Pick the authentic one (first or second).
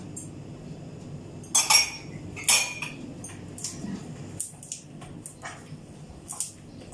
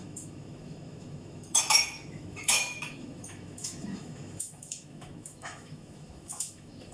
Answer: first